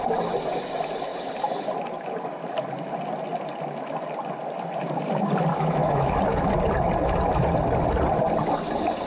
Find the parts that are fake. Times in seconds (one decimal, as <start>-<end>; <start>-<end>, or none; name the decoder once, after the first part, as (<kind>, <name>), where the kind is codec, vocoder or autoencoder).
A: 5.5-6.1 (autoencoder, DAC-VAE)